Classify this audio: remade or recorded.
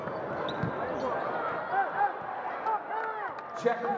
recorded